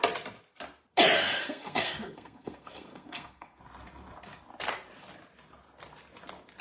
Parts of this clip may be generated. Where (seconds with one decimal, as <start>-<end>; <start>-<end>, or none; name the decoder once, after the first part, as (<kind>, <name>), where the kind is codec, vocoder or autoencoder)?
1.2-3.6 (codec, SNAC)